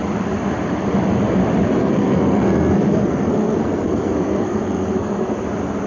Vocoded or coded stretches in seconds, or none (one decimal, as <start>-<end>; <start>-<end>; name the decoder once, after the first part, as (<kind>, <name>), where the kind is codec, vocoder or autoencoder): 1.8-5.3 (codec, SNAC)